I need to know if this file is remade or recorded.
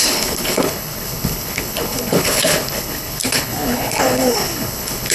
remade